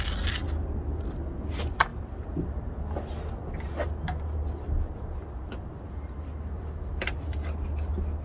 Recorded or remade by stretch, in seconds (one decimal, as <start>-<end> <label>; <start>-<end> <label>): 0.0-8.2 recorded